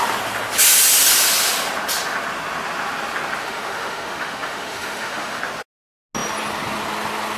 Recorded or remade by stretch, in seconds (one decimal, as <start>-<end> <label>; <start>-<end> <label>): 0.0-3.4 recorded; 3.4-5.4 remade; 5.4-7.4 recorded